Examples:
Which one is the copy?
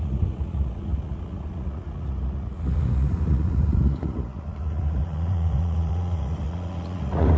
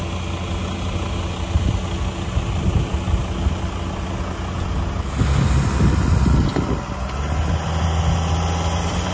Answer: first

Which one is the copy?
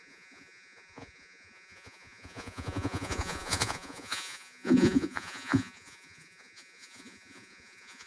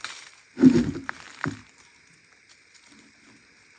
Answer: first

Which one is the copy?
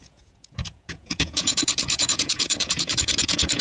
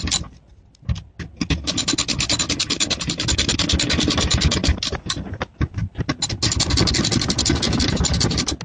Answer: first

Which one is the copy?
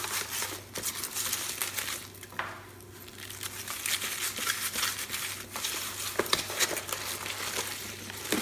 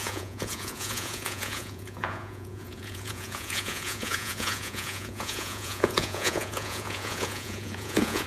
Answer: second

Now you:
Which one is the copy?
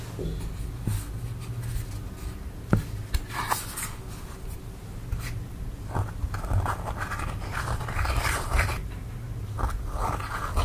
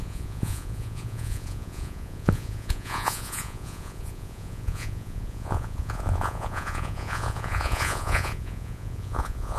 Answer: second